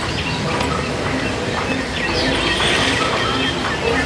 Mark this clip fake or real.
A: real